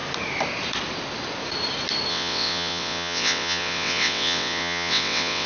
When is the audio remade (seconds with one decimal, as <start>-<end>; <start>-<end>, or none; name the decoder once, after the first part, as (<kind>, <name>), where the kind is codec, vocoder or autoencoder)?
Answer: 2.1-5.5 (vocoder, WaveNeXt)